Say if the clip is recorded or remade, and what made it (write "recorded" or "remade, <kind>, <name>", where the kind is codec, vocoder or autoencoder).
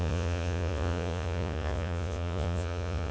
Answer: remade, vocoder, Vocos